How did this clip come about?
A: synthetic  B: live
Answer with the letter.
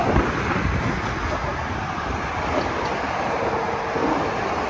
B